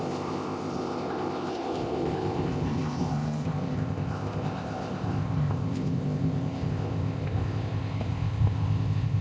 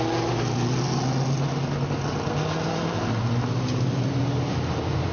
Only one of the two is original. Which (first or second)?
second